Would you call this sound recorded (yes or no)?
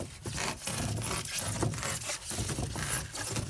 yes